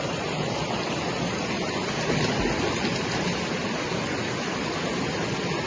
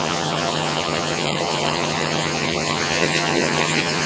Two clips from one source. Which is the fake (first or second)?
second